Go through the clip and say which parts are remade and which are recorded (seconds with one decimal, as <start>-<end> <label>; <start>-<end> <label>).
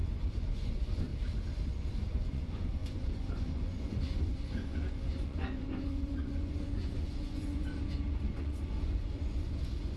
0.0-1.1 remade; 1.1-2.1 recorded; 2.1-10.0 remade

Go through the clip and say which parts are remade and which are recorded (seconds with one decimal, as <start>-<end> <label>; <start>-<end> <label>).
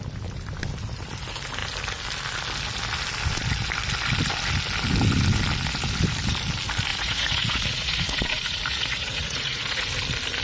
0.0-6.9 recorded; 6.9-9.9 remade; 9.9-10.4 recorded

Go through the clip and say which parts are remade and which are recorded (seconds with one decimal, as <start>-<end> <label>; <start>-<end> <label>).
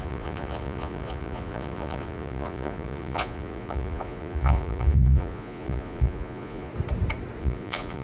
0.0-6.7 remade; 6.7-7.4 recorded; 7.4-8.0 remade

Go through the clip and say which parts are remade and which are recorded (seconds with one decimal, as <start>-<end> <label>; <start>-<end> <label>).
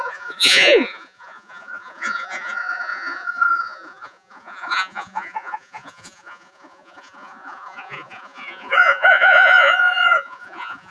0.0-10.9 remade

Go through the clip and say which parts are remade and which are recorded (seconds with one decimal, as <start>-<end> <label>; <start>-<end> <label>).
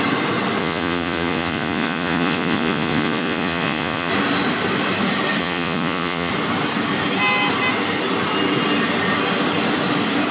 0.0-0.6 recorded; 0.6-4.1 remade; 4.1-5.4 recorded; 5.4-6.3 remade; 6.3-10.3 recorded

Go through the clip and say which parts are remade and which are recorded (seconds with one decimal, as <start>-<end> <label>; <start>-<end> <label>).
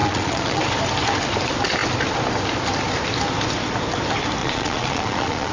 0.0-0.6 remade; 0.6-4.4 recorded; 4.4-5.5 remade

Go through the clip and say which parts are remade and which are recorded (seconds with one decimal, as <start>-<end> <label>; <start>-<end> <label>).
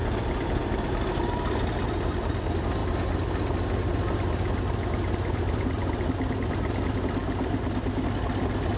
0.0-8.8 recorded